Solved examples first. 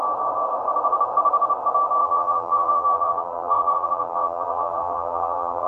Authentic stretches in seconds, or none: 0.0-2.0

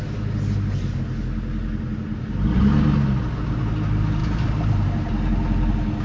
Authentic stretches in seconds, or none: 0.0-4.2; 4.7-6.0

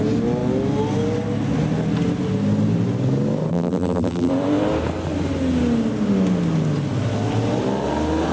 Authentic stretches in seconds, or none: 0.0-3.5; 4.3-8.3

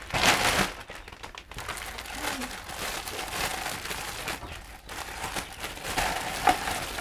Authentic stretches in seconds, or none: 0.0-7.0

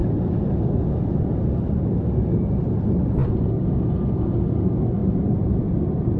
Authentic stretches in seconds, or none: 0.0-5.0

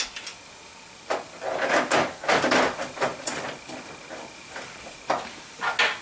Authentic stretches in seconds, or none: 0.0-3.1; 3.9-6.0